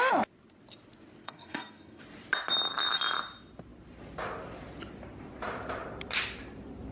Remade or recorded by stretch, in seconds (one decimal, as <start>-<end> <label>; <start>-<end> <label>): 0.0-1.2 recorded; 1.2-2.0 remade; 2.0-6.9 recorded

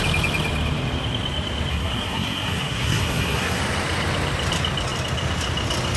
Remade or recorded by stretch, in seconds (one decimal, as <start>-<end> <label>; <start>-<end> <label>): 0.0-1.7 recorded; 1.7-3.6 remade; 3.6-6.0 recorded

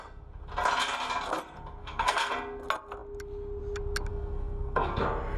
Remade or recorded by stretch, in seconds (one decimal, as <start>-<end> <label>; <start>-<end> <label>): 0.0-1.8 recorded; 1.8-2.3 remade; 2.3-4.1 recorded; 4.1-5.0 remade; 5.0-5.4 recorded

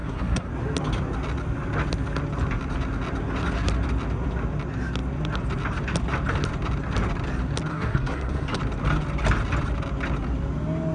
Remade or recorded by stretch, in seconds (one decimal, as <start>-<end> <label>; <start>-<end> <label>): 0.0-0.5 remade; 0.5-7.7 recorded; 7.7-8.6 remade; 8.6-10.9 recorded

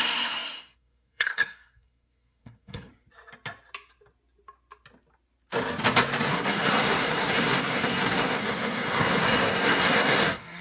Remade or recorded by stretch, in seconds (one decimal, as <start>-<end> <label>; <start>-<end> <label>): 0.0-2.9 remade; 2.9-6.3 recorded; 6.3-10.6 remade

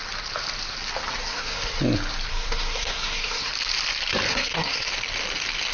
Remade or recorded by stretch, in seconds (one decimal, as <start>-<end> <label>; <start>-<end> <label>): 0.0-1.2 recorded; 1.2-1.8 remade; 1.8-2.3 recorded; 2.3-3.5 remade; 3.5-4.3 recorded; 4.3-4.9 remade; 4.9-5.7 recorded

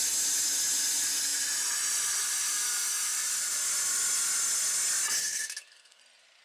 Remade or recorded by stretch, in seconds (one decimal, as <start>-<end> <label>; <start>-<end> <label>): 0.0-5.2 recorded; 5.2-6.0 remade; 6.0-6.4 recorded

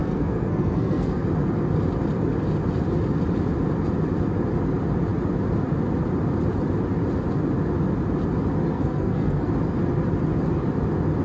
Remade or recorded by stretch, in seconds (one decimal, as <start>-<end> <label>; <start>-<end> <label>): 0.0-1.2 remade; 1.2-8.7 recorded; 8.7-9.5 remade; 9.5-11.2 recorded